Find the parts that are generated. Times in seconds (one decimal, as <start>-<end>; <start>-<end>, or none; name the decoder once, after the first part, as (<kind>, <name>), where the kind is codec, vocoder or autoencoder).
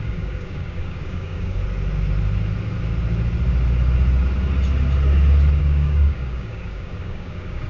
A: 0.0-1.6 (codec, DAC); 5.6-7.7